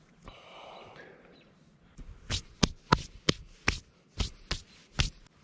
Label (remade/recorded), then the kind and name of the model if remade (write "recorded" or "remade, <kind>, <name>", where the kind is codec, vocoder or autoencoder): recorded